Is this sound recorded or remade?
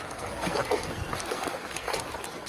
remade